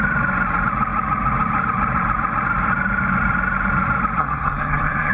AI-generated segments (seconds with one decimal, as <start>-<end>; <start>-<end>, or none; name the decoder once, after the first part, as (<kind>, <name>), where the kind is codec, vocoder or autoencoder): 4.2-5.1 (codec, SNAC)